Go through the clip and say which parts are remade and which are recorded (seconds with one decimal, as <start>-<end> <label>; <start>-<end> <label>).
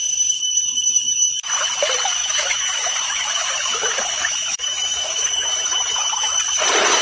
0.0-0.4 recorded; 0.4-1.5 remade; 1.5-2.2 recorded; 2.2-6.4 remade; 6.4-7.0 recorded